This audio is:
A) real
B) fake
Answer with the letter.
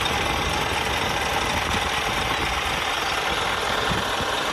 A